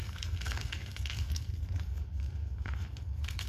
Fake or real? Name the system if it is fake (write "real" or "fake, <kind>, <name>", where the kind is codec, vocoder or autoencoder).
fake, codec, SNAC